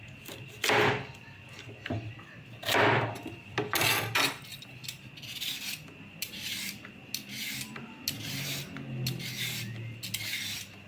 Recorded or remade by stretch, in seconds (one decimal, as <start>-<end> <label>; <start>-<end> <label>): 0.0-2.6 recorded; 2.6-3.6 remade; 3.6-10.9 recorded